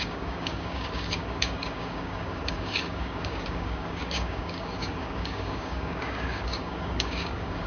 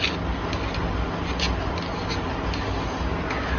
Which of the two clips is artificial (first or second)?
first